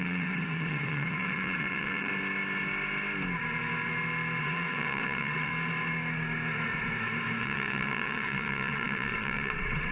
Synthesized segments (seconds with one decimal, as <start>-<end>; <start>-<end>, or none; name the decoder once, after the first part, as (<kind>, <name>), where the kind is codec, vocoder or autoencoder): 0.0-2.1 (vocoder, WaveNeXt); 4.4-5.5; 7.4-9.9